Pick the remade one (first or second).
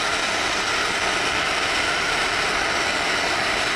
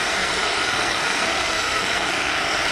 second